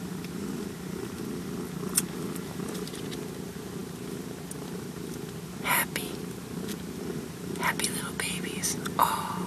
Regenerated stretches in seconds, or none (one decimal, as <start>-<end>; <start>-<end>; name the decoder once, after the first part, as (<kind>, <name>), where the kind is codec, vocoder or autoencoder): none